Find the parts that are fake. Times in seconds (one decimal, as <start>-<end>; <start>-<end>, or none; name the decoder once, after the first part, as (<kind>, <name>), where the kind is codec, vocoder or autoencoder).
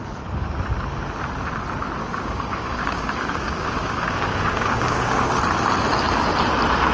2.0-5.4 (codec, DAC)